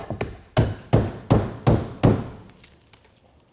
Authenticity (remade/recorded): recorded